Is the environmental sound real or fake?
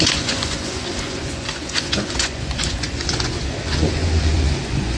fake